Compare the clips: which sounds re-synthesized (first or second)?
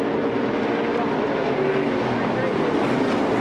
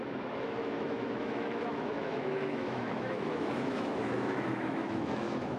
second